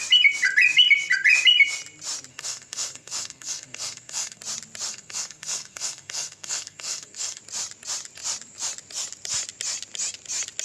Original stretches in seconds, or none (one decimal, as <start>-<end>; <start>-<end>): 0.0-2.3; 4.4-4.9; 7.4-10.6